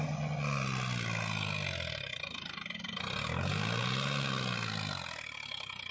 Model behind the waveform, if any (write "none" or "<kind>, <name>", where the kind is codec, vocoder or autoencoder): none